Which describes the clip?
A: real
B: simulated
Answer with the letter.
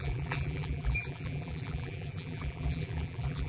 B